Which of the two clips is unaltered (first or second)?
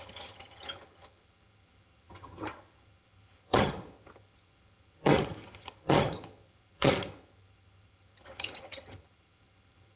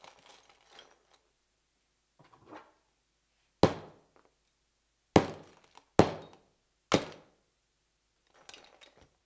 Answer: second